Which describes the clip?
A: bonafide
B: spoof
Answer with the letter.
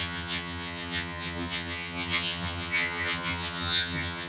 B